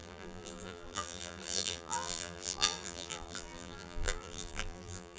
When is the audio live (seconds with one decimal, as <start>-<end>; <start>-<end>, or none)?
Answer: none